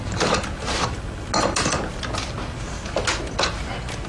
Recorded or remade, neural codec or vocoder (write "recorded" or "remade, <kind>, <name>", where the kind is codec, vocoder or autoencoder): recorded